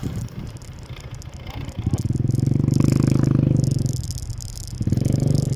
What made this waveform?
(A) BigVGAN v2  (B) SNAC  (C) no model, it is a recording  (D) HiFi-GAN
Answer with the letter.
C